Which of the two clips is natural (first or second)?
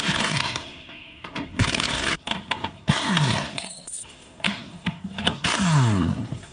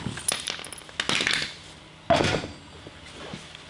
second